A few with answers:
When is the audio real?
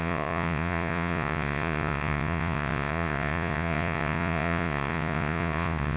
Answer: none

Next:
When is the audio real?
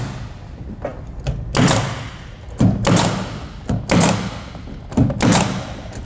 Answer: 0.0-6.1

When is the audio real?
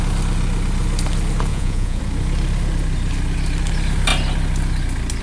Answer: 0.0-1.5; 2.0-5.2